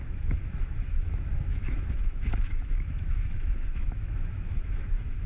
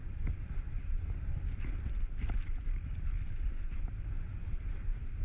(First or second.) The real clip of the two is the second